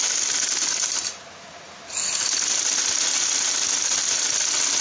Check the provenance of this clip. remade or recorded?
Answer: recorded